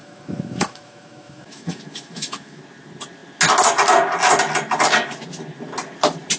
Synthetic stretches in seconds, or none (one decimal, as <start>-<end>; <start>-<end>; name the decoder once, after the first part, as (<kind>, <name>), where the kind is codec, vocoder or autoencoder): 0.0-2.6 (autoencoder, DAC-VAE)